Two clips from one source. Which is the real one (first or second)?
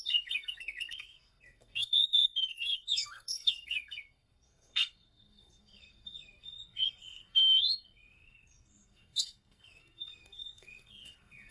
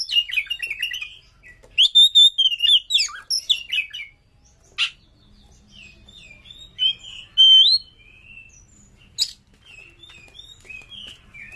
second